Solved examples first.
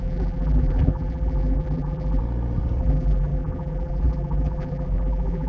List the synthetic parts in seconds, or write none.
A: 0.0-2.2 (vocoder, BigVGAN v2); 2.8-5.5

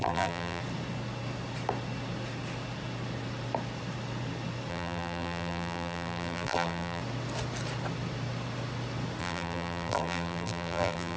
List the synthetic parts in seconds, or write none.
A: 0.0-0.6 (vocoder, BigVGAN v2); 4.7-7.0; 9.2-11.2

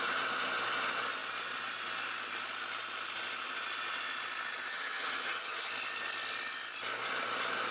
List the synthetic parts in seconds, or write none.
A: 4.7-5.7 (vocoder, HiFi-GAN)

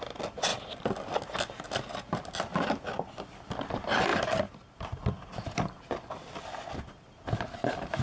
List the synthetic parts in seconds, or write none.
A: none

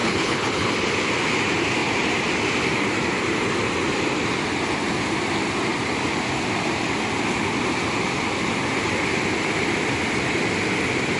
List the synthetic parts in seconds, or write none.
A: 0.0-0.7 (codec, HILCodec)

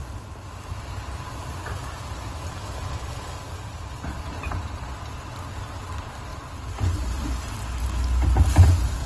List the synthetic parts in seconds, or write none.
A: 6.3-7.3 (vocoder, BigVGAN v2)